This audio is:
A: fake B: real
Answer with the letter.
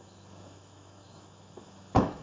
A